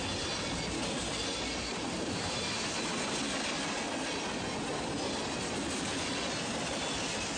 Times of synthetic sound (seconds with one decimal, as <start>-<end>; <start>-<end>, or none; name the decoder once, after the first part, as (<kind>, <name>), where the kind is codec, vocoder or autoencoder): 1.7-2.8 (vocoder, BigVGAN v2)